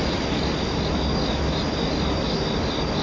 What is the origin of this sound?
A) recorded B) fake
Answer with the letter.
A